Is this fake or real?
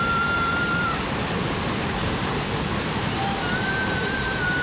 real